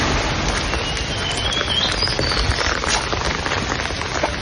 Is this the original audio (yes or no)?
yes